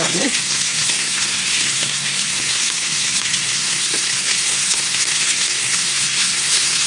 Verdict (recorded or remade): remade